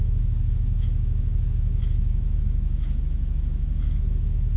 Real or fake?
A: fake